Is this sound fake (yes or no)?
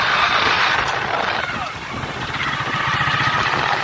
no